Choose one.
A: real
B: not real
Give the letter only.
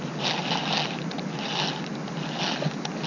A